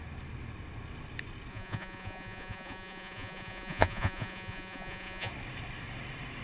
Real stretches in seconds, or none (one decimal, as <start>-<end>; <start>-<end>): 0.0-1.5; 5.3-6.4

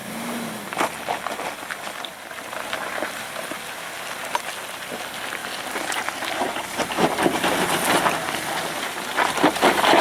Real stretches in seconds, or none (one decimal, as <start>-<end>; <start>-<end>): 0.0-10.0

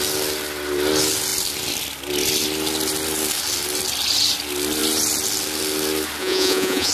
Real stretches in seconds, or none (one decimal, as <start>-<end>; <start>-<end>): 0.0-6.2